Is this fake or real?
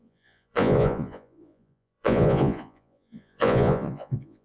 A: fake